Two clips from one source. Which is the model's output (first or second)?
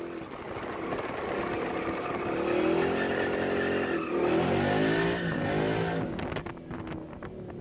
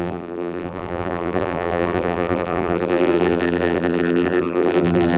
second